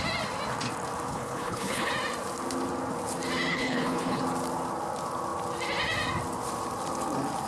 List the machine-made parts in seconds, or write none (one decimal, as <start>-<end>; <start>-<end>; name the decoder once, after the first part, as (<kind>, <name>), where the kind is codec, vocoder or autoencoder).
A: 1.1-1.9 (codec, HILCodec); 3.5-4.2